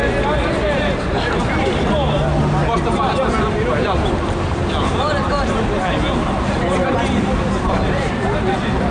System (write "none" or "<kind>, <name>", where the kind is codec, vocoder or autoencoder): none